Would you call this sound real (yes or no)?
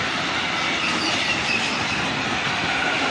yes